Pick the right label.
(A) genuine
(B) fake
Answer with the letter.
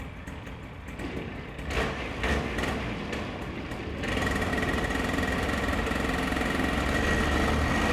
A